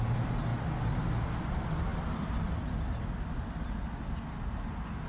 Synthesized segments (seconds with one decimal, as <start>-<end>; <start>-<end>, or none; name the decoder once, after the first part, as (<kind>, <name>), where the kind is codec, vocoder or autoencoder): none